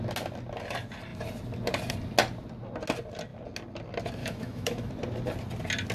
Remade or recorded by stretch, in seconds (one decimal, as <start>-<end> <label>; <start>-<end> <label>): 0.0-4.2 recorded; 4.2-4.9 remade; 4.9-5.9 recorded